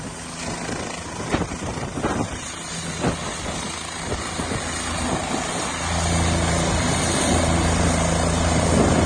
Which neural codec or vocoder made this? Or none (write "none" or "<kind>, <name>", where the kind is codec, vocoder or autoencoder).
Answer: none